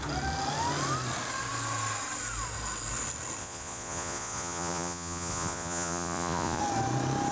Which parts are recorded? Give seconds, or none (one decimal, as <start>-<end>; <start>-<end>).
0.0-3.4; 6.6-7.3